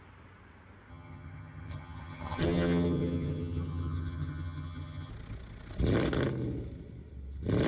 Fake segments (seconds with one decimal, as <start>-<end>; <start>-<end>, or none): 0.9-5.1